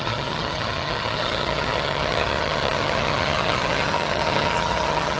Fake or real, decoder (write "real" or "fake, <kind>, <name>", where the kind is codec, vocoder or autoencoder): fake, vocoder, HiFi-GAN